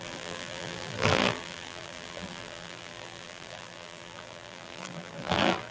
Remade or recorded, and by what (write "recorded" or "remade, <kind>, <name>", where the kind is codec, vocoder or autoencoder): remade, vocoder, BigVGAN v2